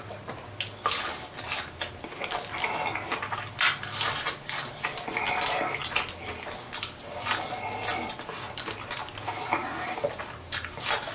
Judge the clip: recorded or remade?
recorded